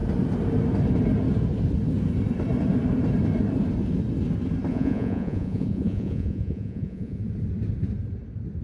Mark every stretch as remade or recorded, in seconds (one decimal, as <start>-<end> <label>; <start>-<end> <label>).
0.0-4.7 recorded; 4.7-7.2 remade; 7.2-8.6 recorded